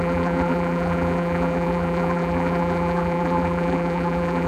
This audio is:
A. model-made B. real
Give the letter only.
A